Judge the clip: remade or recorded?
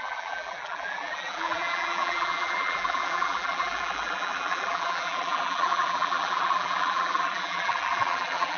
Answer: remade